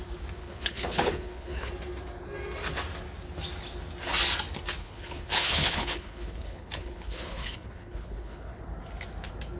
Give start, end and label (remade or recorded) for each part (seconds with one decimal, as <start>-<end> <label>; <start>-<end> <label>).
0.0-0.4 recorded; 0.4-1.7 remade; 1.7-4.8 recorded; 4.8-8.6 remade; 8.6-9.6 recorded